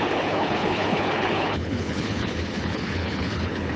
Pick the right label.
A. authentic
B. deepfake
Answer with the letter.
B